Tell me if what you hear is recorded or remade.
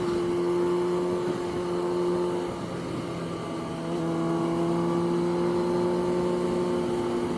recorded